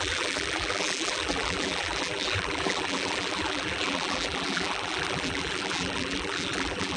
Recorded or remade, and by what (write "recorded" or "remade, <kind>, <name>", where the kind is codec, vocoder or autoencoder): remade, vocoder, BigVGAN v2